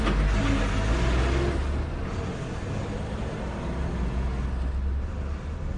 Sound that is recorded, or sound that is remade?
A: recorded